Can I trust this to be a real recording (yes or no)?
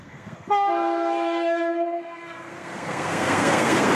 no